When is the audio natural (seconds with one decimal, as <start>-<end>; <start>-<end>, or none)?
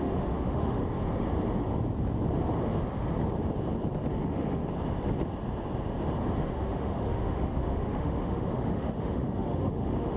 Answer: 0.8-4.1; 4.6-6.5